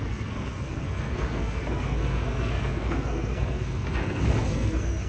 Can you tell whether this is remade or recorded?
remade